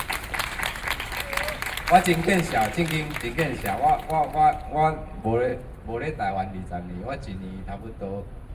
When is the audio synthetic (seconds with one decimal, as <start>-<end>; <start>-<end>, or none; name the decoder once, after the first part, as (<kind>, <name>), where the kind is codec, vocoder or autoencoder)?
7.4-8.5 (vocoder, Vocos)